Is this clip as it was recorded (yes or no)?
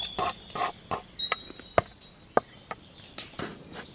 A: yes